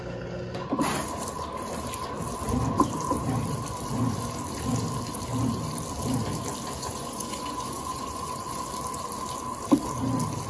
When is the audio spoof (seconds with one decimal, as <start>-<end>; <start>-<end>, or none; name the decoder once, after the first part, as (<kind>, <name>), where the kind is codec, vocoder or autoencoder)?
6.8-8.7 (vocoder, Vocos)